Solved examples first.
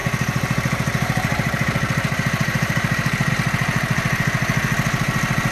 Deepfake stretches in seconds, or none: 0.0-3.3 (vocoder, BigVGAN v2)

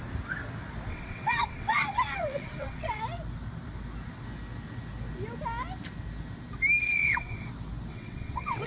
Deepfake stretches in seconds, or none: 0.9-3.0 (vocoder, WaveNeXt); 6.8-7.5; 7.9-8.7

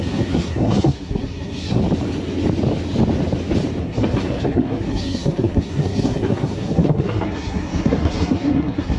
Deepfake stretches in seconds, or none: 0.0-1.8 (codec, SNAC); 3.8-9.0

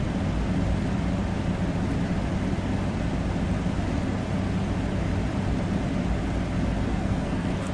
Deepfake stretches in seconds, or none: 6.9-7.7 (codec, SNAC)